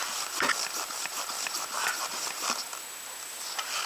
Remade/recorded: recorded